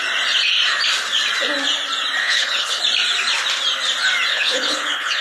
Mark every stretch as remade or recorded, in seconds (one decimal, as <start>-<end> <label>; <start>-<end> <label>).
0.0-2.2 recorded; 2.2-2.8 remade; 2.8-4.3 recorded; 4.3-5.2 remade